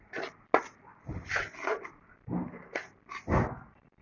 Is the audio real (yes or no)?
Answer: yes